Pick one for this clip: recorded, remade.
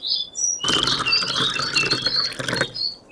recorded